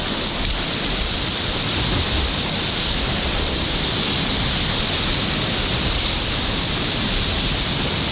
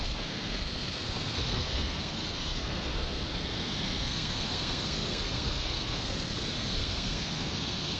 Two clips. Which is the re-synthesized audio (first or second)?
second